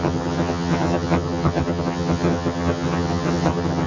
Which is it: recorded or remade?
remade